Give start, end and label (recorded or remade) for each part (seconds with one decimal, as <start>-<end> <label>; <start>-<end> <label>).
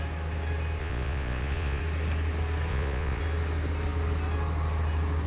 0.0-0.8 recorded; 0.8-1.8 remade; 1.8-2.7 recorded; 2.7-3.2 remade; 3.2-5.3 recorded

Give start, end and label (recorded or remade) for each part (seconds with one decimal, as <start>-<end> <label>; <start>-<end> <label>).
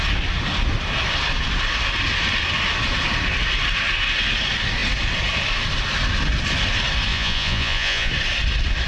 0.0-7.1 recorded; 7.1-8.1 remade; 8.1-8.9 recorded